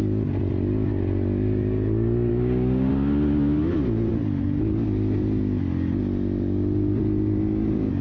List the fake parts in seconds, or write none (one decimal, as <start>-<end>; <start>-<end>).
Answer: 2.3-2.9